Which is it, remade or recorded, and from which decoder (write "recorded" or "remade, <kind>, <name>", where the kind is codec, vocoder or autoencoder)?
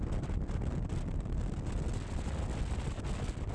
recorded